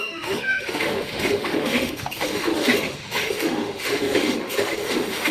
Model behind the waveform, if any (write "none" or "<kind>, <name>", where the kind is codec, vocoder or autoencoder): autoencoder, DAC-VAE